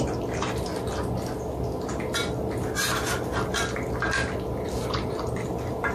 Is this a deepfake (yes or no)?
no